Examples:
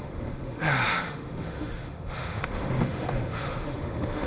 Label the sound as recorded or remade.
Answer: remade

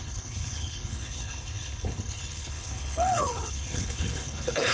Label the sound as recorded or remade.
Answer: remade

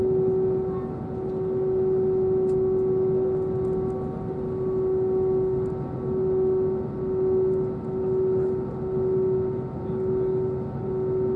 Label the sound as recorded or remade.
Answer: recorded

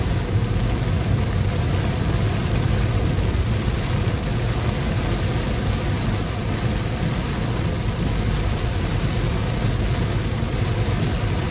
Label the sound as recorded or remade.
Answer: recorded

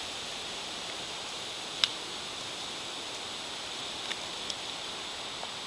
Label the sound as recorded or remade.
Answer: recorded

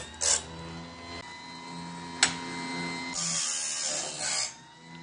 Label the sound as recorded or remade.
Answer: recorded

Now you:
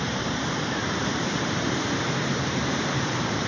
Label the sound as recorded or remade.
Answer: remade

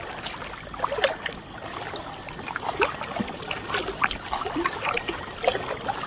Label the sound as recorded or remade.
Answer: recorded